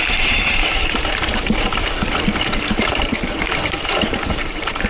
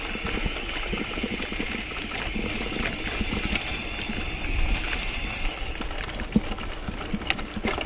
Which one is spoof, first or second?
first